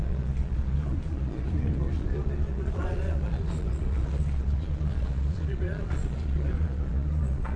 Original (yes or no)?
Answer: no